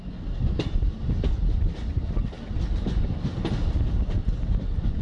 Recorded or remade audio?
recorded